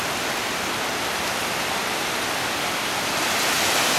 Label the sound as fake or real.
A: real